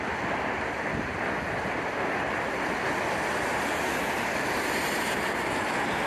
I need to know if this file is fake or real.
real